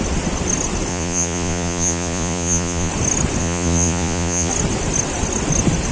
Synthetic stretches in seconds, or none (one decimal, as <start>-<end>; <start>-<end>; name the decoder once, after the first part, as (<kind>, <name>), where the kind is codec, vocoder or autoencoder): 0.9-2.9 (vocoder, Vocos); 3.4-4.5